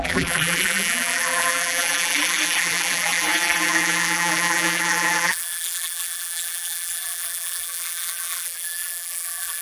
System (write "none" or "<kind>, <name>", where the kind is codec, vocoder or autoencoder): vocoder, BigVGAN v2